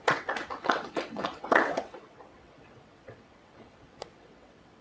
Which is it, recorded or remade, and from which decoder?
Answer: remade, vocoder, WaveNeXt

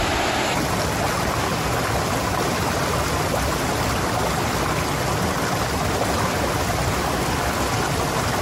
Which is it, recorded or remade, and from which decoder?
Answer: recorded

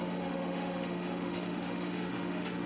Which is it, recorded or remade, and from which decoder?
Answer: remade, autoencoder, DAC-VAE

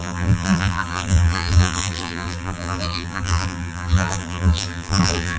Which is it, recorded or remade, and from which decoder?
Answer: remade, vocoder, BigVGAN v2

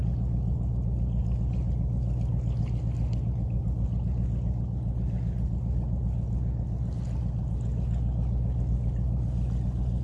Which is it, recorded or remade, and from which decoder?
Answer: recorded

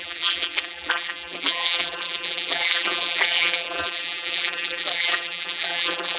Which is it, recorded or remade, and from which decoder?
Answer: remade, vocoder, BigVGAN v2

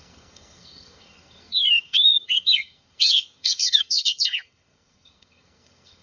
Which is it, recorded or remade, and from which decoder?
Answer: remade, codec, SNAC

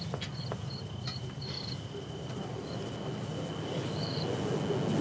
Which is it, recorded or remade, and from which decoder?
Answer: recorded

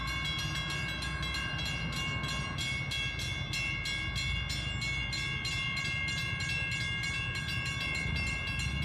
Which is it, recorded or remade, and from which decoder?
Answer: recorded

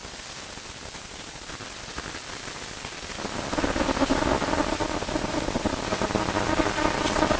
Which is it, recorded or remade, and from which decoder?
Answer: recorded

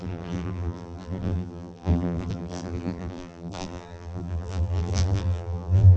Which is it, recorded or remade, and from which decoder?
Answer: remade, vocoder, BigVGAN v2